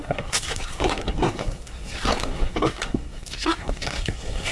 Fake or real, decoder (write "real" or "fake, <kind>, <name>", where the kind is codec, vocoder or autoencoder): fake, codec, SNAC